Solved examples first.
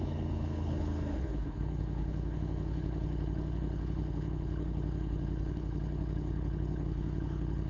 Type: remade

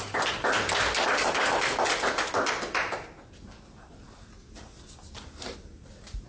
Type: recorded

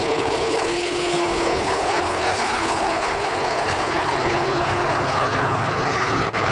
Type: remade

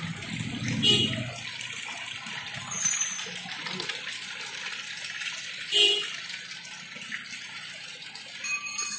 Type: recorded